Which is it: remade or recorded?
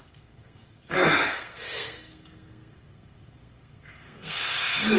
remade